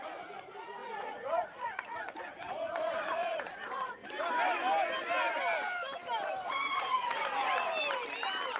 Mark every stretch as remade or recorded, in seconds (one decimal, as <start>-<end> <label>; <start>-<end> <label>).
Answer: 0.0-4.0 remade; 4.0-6.5 recorded; 6.5-7.7 remade; 7.7-8.6 recorded